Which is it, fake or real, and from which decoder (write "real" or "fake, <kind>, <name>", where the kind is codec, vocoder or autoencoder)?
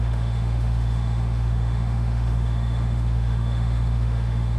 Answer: fake, autoencoder, DAC-VAE